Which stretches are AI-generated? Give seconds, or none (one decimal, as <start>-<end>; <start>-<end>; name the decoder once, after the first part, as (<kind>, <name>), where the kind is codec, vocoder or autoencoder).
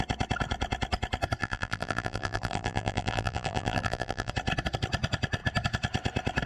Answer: 1.4-4.3 (vocoder, BigVGAN v2)